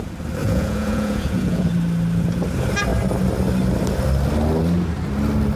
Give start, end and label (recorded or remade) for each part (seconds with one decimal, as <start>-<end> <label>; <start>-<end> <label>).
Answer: 0.0-0.4 recorded; 0.4-1.7 remade; 1.7-5.6 recorded